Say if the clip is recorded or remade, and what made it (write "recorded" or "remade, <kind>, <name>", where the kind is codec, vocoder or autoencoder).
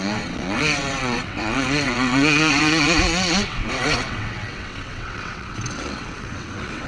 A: remade, vocoder, WaveNeXt